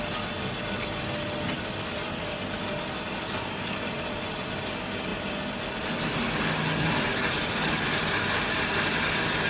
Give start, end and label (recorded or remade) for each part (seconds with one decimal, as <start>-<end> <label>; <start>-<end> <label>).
0.0-9.5 recorded